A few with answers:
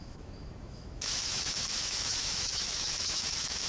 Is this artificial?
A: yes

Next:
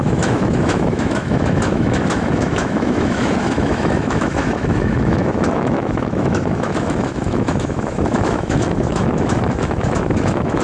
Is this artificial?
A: yes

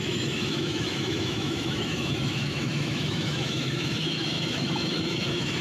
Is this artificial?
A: yes